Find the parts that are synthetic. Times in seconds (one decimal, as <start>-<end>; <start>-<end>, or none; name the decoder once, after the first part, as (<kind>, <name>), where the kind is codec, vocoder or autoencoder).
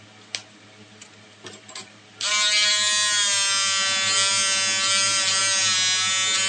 none